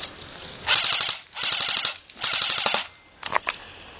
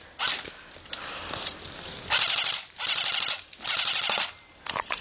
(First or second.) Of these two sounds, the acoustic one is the first